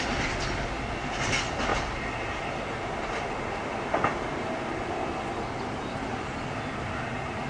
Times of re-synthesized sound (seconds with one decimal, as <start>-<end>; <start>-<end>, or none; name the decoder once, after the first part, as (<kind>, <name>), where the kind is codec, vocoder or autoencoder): none